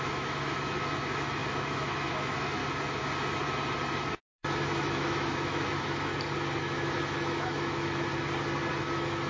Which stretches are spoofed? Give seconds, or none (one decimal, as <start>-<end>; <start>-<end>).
0.0-2.6; 4.1-6.1; 6.6-8.1; 8.7-9.3